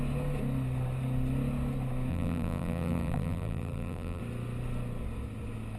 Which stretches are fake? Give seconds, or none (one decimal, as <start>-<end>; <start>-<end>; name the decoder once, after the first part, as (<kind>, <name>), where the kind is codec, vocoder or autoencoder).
2.1-4.2 (vocoder, BigVGAN v2)